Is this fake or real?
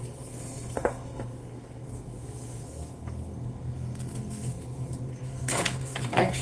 fake